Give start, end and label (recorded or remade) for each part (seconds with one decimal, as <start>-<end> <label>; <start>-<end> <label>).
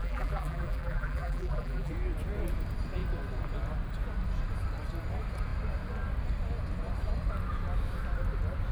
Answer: 0.0-1.9 remade; 1.9-8.7 recorded